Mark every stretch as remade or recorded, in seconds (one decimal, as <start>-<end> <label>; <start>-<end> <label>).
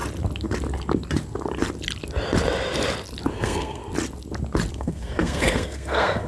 0.0-3.3 recorded; 3.3-3.8 remade; 3.8-4.7 recorded; 4.7-6.3 remade